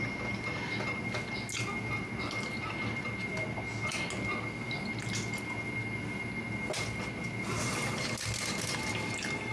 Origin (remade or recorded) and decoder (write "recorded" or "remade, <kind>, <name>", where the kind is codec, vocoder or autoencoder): recorded